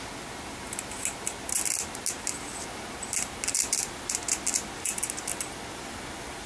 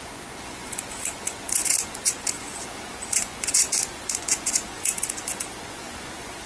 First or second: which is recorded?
first